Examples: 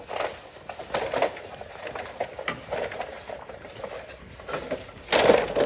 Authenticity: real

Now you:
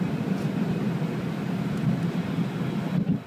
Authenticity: real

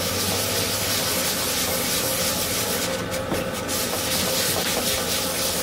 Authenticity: real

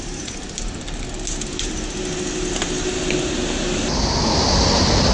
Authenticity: real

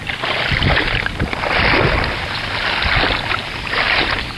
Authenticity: real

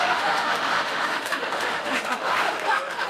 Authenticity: fake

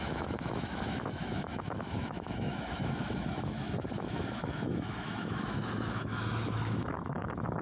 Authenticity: fake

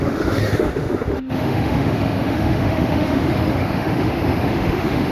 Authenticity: fake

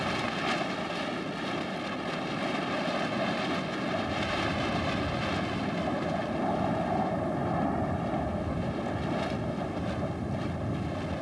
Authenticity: real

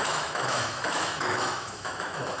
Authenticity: fake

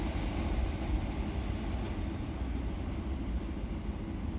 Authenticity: real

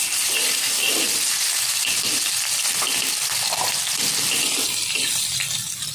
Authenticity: real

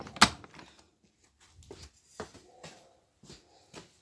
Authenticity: real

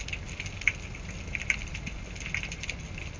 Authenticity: real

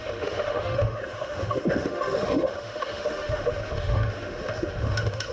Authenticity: fake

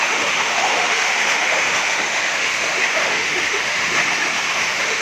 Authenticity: fake